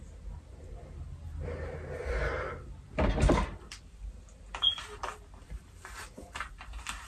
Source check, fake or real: fake